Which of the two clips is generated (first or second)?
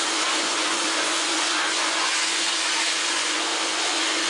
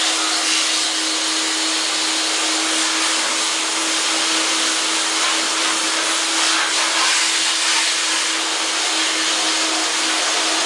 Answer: first